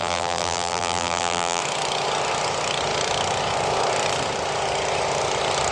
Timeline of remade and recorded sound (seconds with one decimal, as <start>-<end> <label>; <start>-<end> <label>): 0.0-1.6 remade; 1.6-5.7 recorded